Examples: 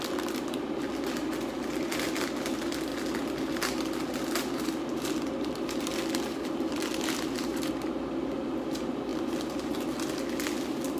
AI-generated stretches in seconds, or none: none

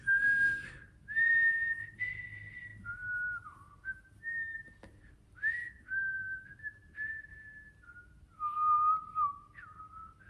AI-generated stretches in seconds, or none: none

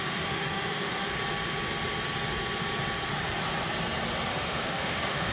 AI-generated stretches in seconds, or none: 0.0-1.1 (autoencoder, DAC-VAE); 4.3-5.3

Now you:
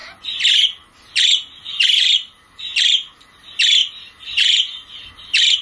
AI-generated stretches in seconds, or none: none

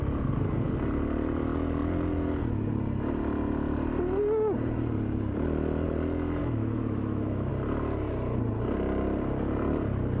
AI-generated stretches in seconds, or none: 6.4-7.5 (autoencoder, DAC-VAE)

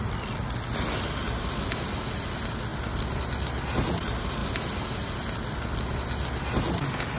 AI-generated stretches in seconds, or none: none